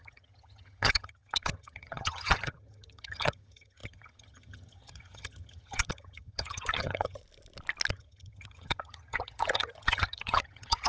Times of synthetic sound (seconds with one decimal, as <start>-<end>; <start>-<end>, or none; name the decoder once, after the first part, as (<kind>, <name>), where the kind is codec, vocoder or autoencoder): 0.0-7.2 (vocoder, HiFi-GAN); 7.9-10.9

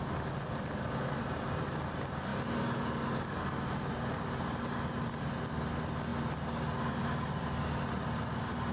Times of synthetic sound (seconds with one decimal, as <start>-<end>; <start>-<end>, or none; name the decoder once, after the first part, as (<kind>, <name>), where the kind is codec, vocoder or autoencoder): none

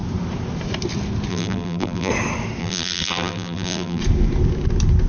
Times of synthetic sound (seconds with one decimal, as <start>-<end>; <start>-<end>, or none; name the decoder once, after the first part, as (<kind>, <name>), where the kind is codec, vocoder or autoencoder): 1.3-2.1 (vocoder, BigVGAN v2); 2.6-4.0

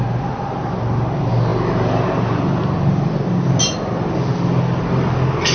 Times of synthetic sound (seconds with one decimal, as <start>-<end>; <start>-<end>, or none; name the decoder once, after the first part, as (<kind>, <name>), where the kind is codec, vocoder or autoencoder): none